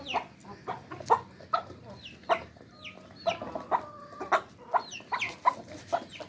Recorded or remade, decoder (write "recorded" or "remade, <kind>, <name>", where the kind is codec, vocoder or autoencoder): recorded